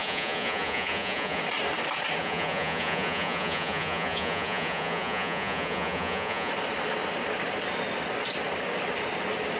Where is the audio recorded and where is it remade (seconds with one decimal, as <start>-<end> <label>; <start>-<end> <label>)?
0.0-1.4 remade; 1.4-2.2 recorded; 2.2-6.5 remade; 6.5-9.6 recorded